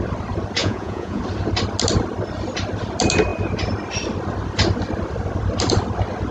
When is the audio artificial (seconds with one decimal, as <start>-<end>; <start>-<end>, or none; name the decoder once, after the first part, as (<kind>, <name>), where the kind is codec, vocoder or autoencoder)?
0.6-1.2 (vocoder, Vocos)